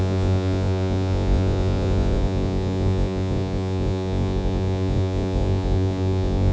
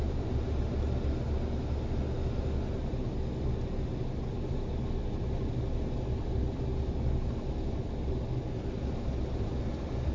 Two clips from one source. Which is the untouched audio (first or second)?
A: second